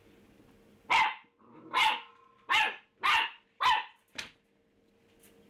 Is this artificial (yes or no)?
no